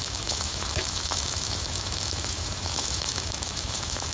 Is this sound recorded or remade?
remade